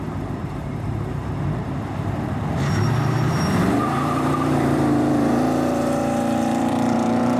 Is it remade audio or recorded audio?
remade